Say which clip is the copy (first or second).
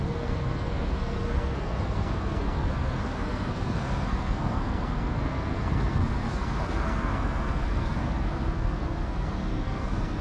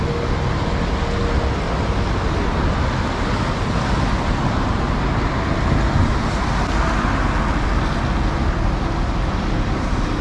first